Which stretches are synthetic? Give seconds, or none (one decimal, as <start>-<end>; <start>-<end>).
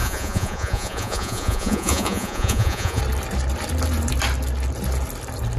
0.0-3.0